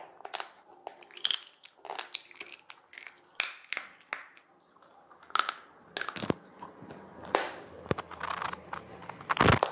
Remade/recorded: recorded